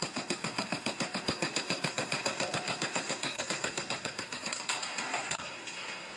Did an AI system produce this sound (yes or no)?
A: yes